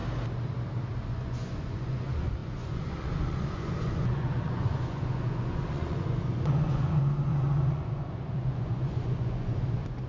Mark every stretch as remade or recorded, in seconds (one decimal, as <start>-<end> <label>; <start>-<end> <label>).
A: 0.0-1.1 recorded; 1.1-10.1 remade